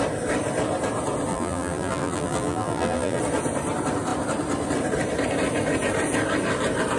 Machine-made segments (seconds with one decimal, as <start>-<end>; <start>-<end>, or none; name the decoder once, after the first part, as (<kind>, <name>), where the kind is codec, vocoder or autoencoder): 1.3-3.2 (vocoder, BigVGAN v2)